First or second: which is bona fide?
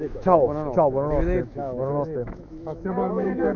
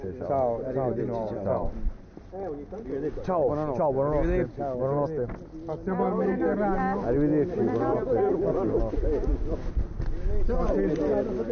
second